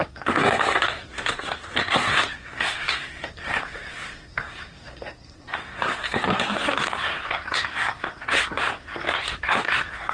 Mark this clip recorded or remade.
remade